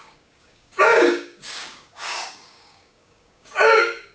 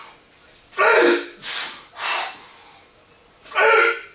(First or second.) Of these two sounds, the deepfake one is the first